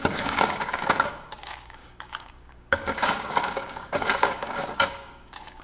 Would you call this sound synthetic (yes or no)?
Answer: yes